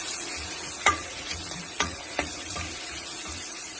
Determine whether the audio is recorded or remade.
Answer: remade